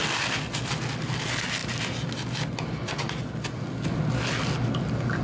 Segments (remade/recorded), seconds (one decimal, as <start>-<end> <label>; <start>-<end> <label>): 0.0-5.2 recorded